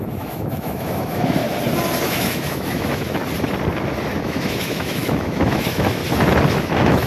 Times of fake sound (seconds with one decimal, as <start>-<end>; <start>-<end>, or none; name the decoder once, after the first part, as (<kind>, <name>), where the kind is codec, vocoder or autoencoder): 0.0-1.4 (autoencoder, DAC-VAE); 2.0-3.2; 4.2-6.0; 6.6-7.1